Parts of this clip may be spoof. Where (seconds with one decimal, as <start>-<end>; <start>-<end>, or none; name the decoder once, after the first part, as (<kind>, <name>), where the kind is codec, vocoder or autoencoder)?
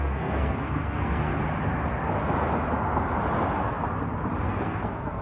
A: 0.0-1.3 (codec, SNAC); 4.4-5.2